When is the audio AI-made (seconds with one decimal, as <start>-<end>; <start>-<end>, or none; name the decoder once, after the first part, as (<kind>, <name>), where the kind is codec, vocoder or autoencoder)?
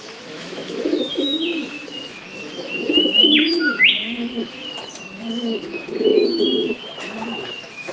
0.0-7.9 (autoencoder, DAC-VAE)